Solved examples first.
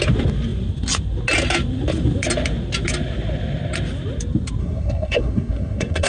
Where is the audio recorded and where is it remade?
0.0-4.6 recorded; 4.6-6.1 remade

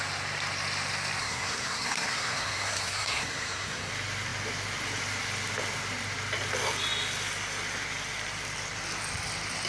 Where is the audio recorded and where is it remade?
0.0-1.2 recorded; 1.2-3.9 remade; 3.9-9.7 recorded

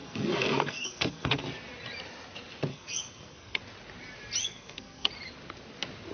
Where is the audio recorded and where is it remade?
0.0-1.5 remade; 1.5-2.7 recorded; 2.7-3.6 remade; 3.6-4.4 recorded; 4.4-5.1 remade; 5.1-6.1 recorded

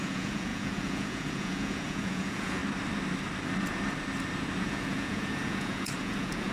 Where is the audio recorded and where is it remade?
0.0-2.6 remade; 2.6-4.6 recorded; 4.6-6.5 remade

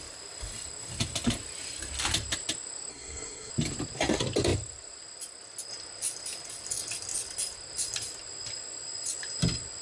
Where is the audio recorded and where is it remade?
0.0-2.9 recorded; 2.9-3.5 remade; 3.5-9.8 recorded